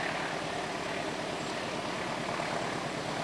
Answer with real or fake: real